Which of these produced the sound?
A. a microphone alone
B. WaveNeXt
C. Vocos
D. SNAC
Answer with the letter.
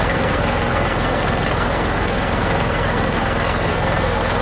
D